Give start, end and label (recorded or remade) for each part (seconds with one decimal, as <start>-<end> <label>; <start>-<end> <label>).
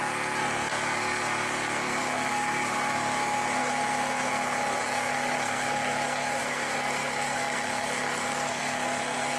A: 0.0-9.4 remade